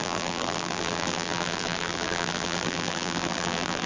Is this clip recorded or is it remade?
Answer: remade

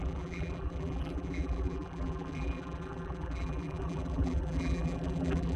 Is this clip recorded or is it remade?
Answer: remade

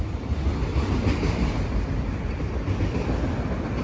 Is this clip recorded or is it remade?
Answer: recorded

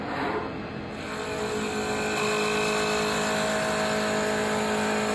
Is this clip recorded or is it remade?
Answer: recorded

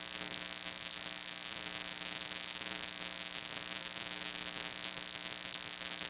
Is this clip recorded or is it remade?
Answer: remade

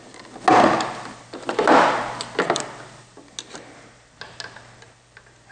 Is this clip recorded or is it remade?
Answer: recorded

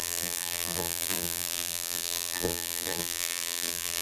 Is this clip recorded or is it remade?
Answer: remade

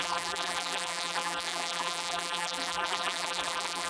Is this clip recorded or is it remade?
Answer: remade